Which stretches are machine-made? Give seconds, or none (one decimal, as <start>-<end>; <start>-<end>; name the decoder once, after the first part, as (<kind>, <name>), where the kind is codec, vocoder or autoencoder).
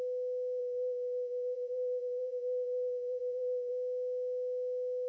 0.6-3.7 (vocoder, BigVGAN v2)